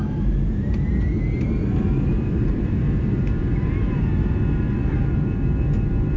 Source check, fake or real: fake